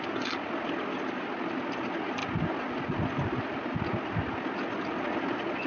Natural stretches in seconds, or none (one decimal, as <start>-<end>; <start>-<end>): 0.0-5.7